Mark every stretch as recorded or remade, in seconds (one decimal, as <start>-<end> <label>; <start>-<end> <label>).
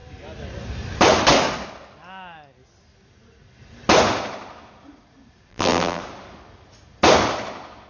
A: 0.0-5.5 recorded; 5.5-6.0 remade; 6.0-7.9 recorded